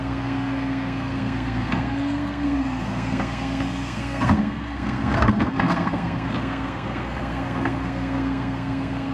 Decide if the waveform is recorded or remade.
remade